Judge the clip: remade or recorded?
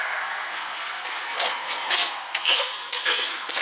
remade